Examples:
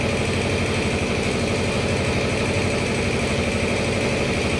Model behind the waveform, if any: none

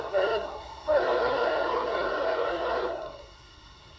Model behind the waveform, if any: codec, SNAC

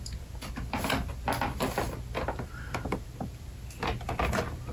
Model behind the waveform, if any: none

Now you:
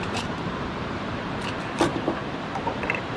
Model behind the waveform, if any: vocoder, BigVGAN v2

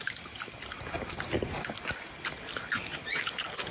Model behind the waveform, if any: none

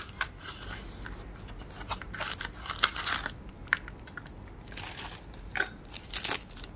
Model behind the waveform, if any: none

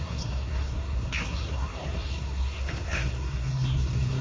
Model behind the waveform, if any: codec, SNAC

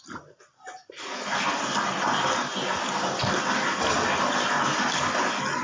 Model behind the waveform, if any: none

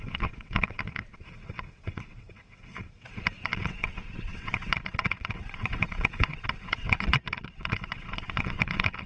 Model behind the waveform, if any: vocoder, WaveNeXt